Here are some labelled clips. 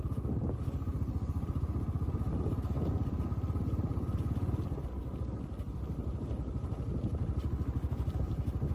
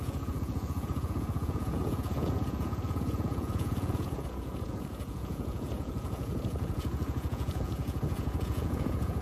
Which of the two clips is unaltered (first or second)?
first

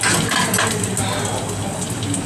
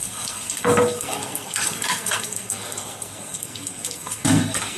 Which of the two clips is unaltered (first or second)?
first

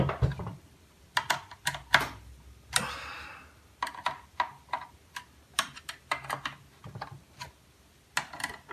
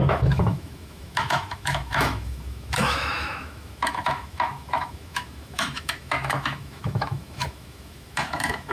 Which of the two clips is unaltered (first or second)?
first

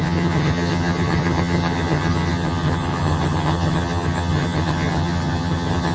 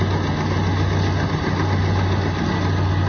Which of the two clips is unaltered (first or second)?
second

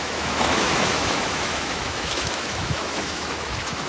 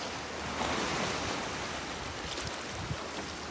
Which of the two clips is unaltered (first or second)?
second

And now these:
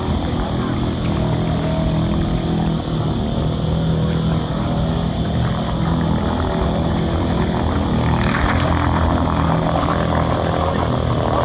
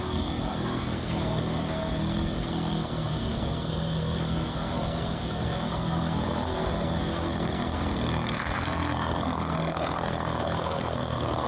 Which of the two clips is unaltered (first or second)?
first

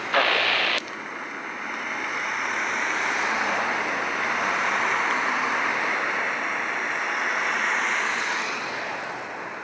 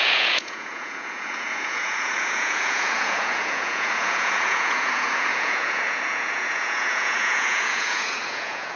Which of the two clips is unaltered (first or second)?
first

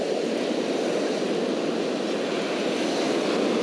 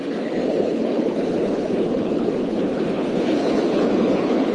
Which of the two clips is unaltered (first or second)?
first